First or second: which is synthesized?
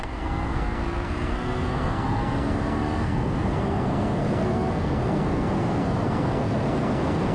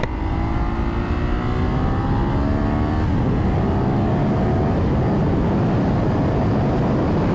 first